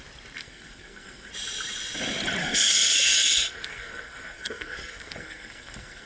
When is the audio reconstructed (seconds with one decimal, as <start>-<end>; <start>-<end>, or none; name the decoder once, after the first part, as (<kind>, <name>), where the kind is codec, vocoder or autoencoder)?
0.4-1.3 (codec, SNAC); 2.4-6.1